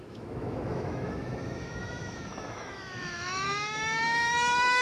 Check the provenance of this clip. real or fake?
fake